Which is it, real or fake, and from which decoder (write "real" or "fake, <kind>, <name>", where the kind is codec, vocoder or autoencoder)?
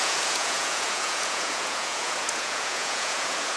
fake, vocoder, Vocos